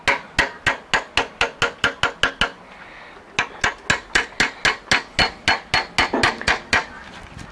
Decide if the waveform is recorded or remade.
recorded